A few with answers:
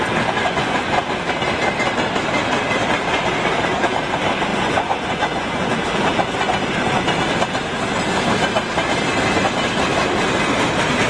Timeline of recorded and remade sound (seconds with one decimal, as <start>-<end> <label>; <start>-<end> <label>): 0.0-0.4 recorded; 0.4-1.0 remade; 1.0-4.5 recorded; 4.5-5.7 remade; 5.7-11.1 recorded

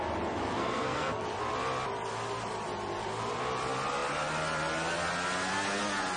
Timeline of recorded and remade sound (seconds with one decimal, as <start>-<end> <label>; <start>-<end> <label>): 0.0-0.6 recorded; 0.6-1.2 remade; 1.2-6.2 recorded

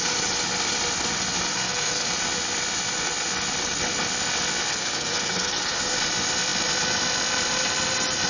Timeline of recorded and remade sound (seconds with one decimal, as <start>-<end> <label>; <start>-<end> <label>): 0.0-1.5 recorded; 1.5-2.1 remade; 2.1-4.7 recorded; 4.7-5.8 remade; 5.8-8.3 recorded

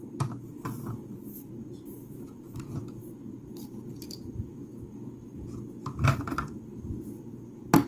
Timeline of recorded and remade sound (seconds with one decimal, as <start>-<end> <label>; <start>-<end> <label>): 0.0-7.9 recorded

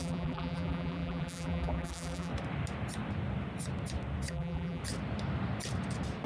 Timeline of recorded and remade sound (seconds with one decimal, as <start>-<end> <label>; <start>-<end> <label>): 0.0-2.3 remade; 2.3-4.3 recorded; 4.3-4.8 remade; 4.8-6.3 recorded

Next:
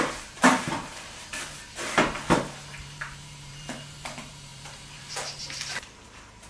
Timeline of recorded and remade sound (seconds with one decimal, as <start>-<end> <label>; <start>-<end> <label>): 0.0-1.3 remade; 1.3-2.4 recorded; 2.4-6.5 remade